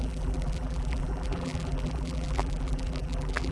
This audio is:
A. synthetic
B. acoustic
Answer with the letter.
A